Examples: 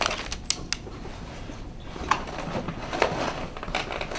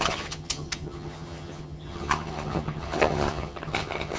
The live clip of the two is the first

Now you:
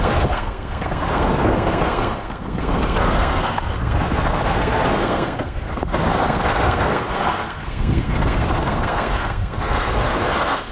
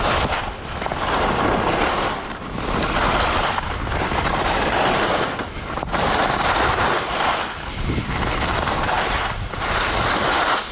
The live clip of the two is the second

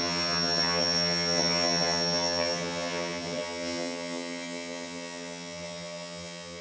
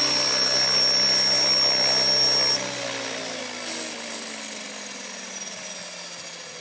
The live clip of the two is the second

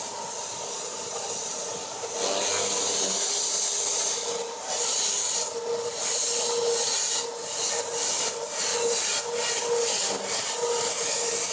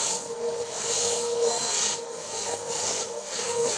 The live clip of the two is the first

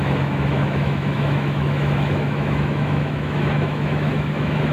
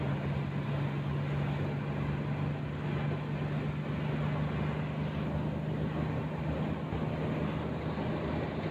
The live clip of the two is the second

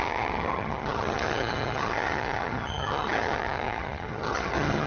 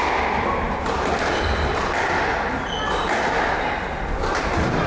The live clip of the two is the second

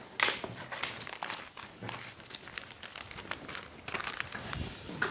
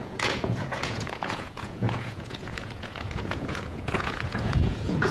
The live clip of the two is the first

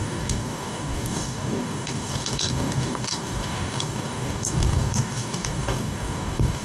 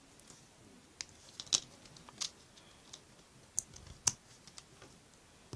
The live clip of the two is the second